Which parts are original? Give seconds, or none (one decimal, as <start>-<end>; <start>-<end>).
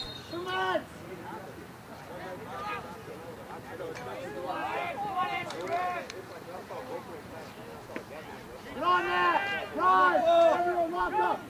7.6-10.9